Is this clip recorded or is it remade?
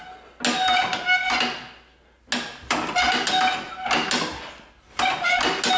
recorded